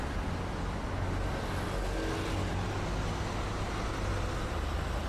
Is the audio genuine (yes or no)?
yes